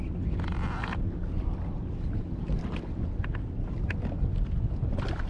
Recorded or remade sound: recorded